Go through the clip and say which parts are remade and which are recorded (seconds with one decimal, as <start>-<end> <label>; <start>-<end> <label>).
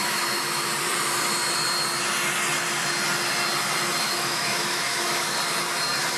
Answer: 0.0-0.7 remade; 0.7-4.0 recorded; 4.0-5.3 remade; 5.3-6.2 recorded